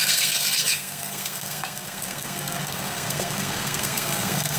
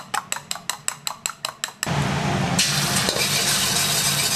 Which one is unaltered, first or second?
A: second